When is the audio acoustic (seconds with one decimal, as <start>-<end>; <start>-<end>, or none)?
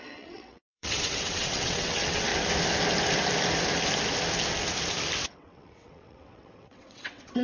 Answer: 2.3-5.3